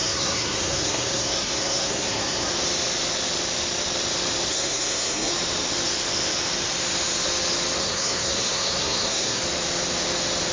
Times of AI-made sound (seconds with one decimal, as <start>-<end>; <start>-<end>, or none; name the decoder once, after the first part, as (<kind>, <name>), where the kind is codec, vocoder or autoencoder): 0.0-2.5 (codec, SNAC); 4.5-5.3; 7.8-9.4